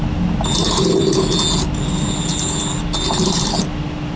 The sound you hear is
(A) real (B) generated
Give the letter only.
A